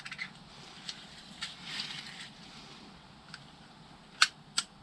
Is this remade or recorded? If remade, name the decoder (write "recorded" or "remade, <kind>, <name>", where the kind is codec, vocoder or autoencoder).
recorded